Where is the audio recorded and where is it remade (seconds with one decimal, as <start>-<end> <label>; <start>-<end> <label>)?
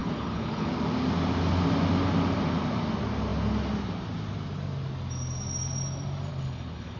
0.0-0.7 remade; 0.7-6.3 recorded; 6.3-7.0 remade